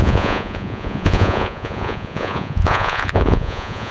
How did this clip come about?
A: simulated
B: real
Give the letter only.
A